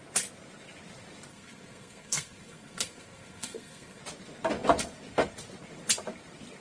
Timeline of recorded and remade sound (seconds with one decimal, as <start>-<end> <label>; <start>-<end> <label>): 0.0-1.3 recorded; 1.3-4.0 remade; 4.0-6.6 recorded

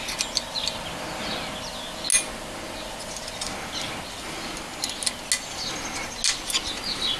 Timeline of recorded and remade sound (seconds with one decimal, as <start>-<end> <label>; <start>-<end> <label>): 0.0-7.2 recorded

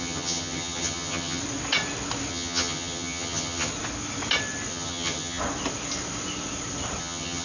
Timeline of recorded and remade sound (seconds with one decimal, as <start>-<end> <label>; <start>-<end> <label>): 0.0-1.4 remade; 1.4-2.3 recorded; 2.3-3.7 remade; 3.7-4.7 recorded; 4.7-5.4 remade; 5.4-7.0 recorded; 7.0-7.4 remade